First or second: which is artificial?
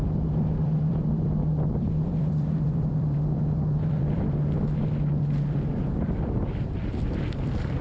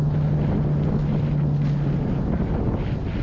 first